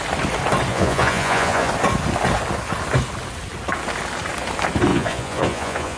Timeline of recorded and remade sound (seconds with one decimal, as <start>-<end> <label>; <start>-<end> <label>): 0.0-0.7 recorded; 0.7-1.7 remade; 1.7-4.9 recorded; 4.9-6.0 remade

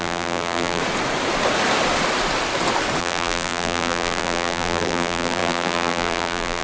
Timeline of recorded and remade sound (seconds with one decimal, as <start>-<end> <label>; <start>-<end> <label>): 0.0-0.8 remade; 0.8-3.0 recorded; 3.0-6.6 remade